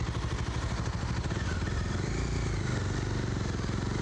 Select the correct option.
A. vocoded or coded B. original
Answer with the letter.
B